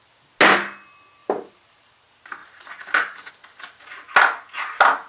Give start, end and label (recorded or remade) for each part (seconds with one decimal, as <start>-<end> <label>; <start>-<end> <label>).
0.0-1.2 recorded; 1.2-1.9 remade; 1.9-2.4 recorded; 2.4-3.3 remade; 3.3-5.1 recorded